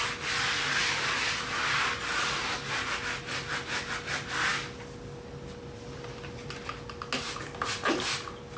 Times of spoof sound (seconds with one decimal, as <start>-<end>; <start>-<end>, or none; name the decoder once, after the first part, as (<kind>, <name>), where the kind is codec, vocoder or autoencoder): none